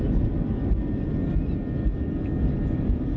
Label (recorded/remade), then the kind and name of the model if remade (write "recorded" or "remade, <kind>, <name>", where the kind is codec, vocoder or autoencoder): recorded